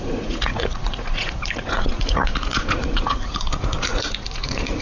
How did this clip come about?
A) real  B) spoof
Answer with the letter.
B